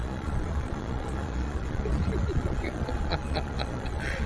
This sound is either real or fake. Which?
fake